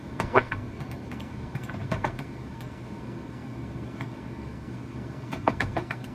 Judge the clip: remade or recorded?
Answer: remade